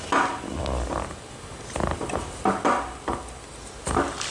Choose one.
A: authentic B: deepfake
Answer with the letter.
A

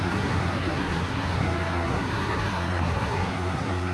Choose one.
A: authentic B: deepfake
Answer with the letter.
B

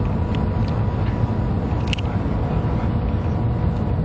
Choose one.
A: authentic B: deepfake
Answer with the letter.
A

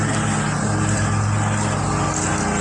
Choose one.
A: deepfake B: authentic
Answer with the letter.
B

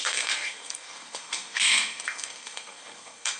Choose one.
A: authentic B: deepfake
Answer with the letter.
B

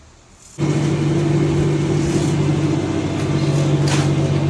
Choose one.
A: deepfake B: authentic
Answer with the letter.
B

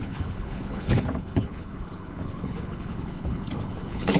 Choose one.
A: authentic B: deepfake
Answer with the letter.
B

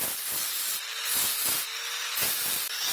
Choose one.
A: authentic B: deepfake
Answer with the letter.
A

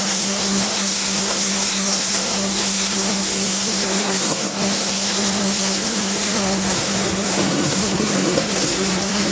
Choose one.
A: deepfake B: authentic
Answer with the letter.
A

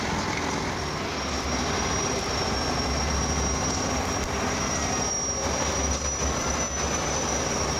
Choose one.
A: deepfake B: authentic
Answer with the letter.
B